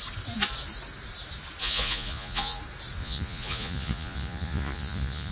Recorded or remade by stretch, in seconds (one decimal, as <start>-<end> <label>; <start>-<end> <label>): 0.0-1.6 recorded; 1.6-2.6 remade; 2.6-3.0 recorded; 3.0-5.3 remade